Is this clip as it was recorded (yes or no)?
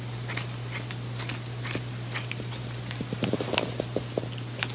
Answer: yes